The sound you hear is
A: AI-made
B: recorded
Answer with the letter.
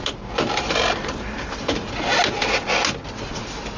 B